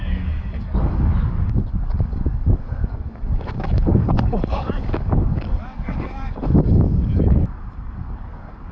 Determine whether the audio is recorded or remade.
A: remade